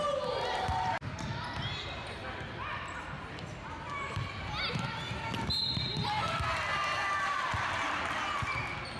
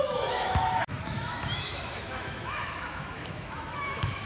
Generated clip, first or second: second